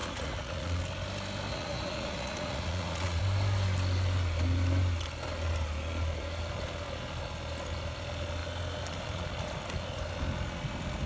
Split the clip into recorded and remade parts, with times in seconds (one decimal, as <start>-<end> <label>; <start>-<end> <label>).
0.0-0.8 remade; 0.8-1.5 recorded; 1.5-3.2 remade; 3.2-11.1 recorded

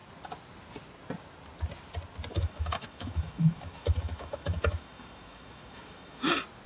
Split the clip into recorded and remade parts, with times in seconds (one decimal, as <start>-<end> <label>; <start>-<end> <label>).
0.0-2.3 recorded; 2.3-6.3 remade; 6.3-6.7 recorded

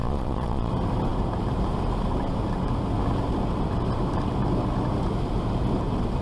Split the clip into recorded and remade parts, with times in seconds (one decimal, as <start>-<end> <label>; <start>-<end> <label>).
0.0-0.7 remade; 0.7-6.2 recorded

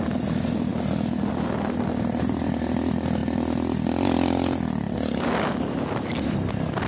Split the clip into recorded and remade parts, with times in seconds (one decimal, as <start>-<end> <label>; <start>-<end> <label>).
0.0-6.9 recorded